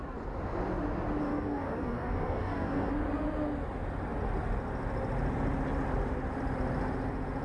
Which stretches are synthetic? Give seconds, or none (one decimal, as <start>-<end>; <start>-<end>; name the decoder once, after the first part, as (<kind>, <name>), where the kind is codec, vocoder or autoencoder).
1.2-2.9 (codec, DAC)